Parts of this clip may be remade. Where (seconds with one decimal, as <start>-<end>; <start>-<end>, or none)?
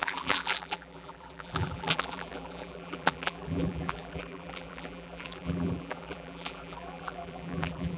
0.0-8.0